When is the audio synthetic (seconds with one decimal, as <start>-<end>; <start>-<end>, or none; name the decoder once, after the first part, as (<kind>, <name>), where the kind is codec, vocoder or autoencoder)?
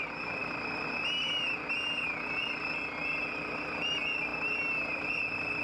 none